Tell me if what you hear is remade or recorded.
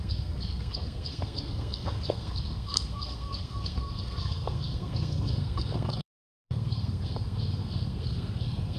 remade